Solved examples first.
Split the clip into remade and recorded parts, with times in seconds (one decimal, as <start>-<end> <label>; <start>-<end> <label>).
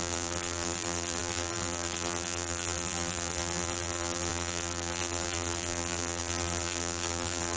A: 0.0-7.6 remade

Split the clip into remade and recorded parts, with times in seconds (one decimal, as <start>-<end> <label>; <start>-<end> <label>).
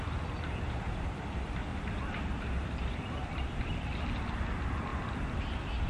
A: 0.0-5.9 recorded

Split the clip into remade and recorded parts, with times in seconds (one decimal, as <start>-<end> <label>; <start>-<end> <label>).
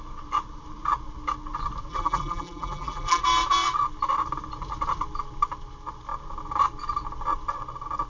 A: 0.0-1.9 recorded; 1.9-3.2 remade; 3.2-8.1 recorded